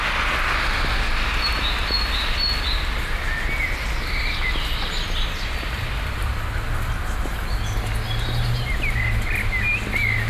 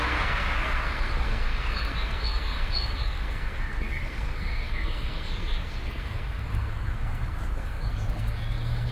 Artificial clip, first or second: second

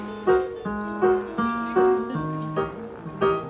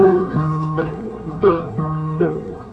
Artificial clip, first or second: second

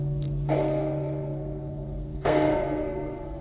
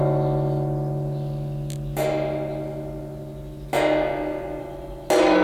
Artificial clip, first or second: first